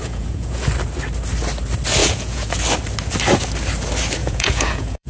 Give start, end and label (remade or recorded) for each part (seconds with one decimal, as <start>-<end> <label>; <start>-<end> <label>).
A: 0.0-0.7 remade; 0.7-2.0 recorded; 2.0-2.5 remade; 2.5-4.2 recorded; 4.2-5.1 remade